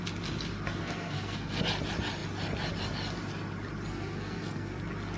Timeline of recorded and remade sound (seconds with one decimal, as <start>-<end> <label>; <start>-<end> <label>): 0.0-0.8 recorded; 0.8-1.6 remade; 1.6-3.9 recorded; 3.9-4.8 remade; 4.8-5.2 recorded